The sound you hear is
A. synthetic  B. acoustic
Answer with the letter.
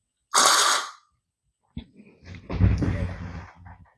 B